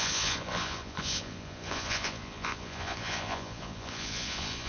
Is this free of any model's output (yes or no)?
no